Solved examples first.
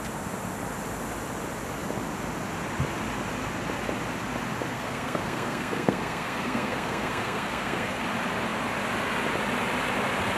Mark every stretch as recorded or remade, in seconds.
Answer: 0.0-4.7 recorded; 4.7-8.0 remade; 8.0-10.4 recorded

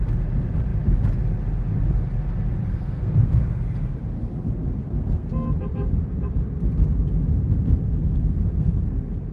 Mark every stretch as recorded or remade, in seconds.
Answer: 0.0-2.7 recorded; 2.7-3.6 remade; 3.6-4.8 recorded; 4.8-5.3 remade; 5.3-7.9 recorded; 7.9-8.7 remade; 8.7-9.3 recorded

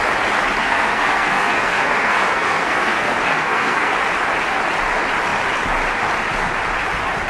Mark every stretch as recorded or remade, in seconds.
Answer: 0.0-0.6 recorded; 0.6-3.9 remade; 3.9-7.3 recorded

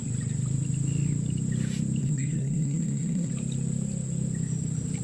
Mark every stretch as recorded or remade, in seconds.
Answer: 0.0-2.0 recorded; 2.0-3.3 remade; 3.3-5.0 recorded

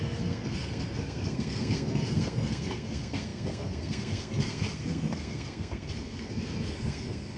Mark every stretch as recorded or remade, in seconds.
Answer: 0.0-7.4 remade

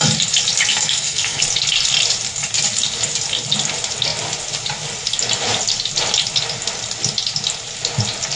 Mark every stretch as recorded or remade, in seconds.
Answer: 0.0-0.7 recorded; 0.7-1.4 remade; 1.4-8.4 recorded

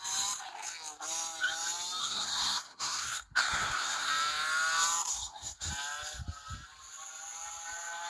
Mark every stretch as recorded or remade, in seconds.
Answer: 0.0-2.0 recorded; 2.0-4.1 remade; 4.1-5.1 recorded; 5.1-5.7 remade; 5.7-8.1 recorded